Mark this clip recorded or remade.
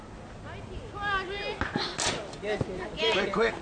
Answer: recorded